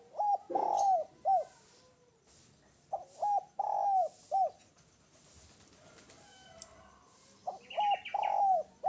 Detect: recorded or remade recorded